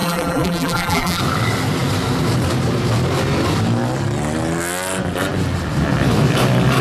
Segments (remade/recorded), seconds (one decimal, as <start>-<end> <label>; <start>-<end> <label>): 0.0-1.2 remade; 1.2-6.8 recorded